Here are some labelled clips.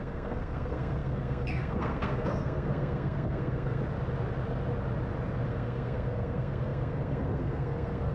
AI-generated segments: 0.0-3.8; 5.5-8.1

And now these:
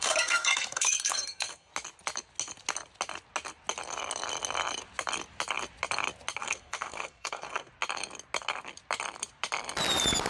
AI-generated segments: 0.0-1.7; 6.4-7.7

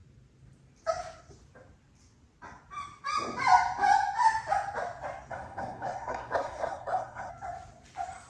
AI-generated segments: 5.3-7.3

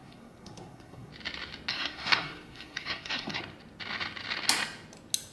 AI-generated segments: 0.0-1.1; 1.7-3.4

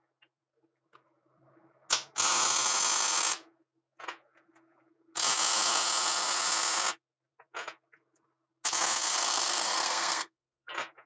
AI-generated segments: 9.1-10.7

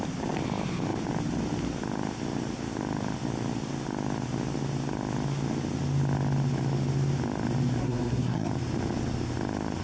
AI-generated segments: 7.8-8.5

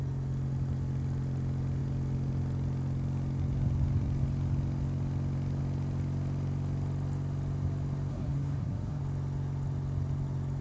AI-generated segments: 8.1-9.0